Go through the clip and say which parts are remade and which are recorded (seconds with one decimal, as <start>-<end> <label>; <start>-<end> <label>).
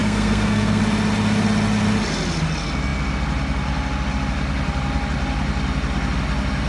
0.0-0.8 remade; 0.8-6.7 recorded